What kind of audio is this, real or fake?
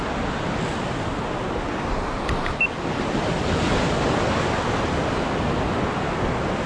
real